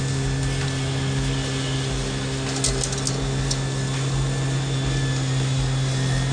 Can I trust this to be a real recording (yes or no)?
yes